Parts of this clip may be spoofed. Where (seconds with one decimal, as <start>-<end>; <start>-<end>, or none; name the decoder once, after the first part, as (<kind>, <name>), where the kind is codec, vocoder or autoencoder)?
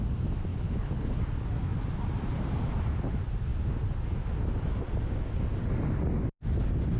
0.5-1.2 (codec, HILCodec)